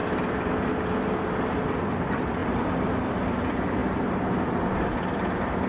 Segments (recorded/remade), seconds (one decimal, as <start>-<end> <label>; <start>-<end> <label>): 0.0-5.7 recorded